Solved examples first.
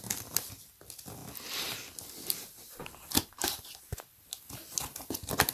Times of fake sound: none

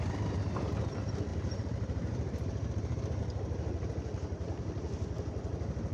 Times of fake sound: 1.3-3.2 (vocoder, BigVGAN v2)